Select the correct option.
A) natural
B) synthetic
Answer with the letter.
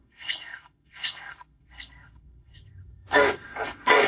B